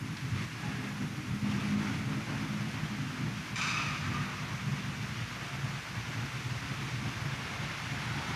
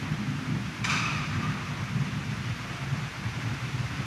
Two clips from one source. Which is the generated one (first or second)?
second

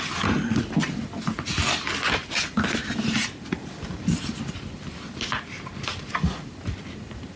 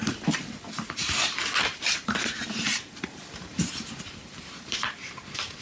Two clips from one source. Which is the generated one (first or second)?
second